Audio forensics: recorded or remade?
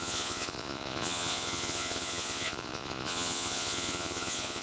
remade